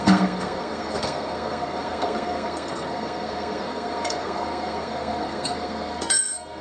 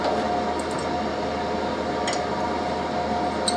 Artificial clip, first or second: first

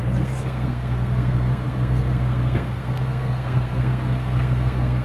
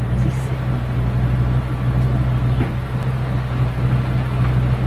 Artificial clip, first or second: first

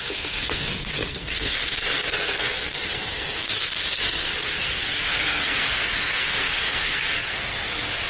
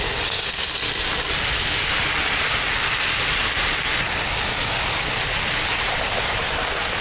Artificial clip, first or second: first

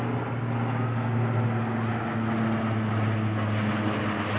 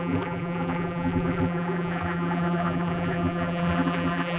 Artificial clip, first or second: second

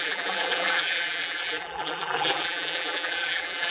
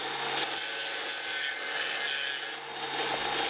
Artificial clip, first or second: first